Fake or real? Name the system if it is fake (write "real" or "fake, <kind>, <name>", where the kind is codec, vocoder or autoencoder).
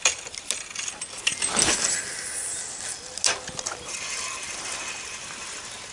real